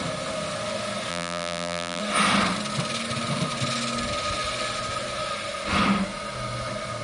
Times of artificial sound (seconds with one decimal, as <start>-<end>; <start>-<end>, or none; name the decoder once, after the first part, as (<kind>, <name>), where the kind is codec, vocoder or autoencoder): 1.1-2.0 (vocoder, BigVGAN v2)